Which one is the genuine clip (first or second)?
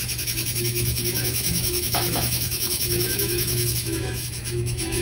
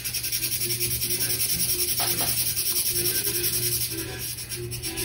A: second